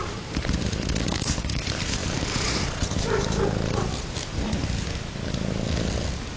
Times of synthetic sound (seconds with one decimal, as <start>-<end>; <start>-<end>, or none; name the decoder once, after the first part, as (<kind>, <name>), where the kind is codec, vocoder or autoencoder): 2.0-4.0 (vocoder, BigVGAN v2)